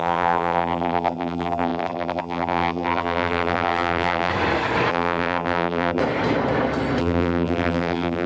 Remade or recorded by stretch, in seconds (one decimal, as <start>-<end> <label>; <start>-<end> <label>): 0.0-4.3 remade; 4.3-4.9 recorded; 4.9-6.0 remade; 6.0-7.0 recorded; 7.0-8.3 remade